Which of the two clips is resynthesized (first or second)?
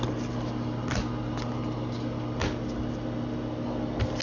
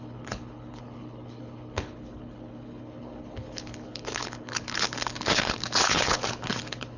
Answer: second